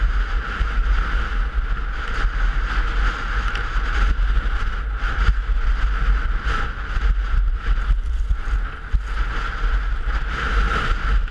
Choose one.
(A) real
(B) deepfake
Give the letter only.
A